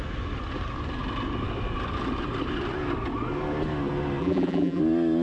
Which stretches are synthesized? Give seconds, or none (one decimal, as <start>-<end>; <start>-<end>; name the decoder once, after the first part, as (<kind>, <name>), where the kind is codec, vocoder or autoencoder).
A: 4.2-4.8 (vocoder, BigVGAN v2)